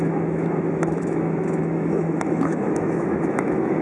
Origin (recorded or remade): remade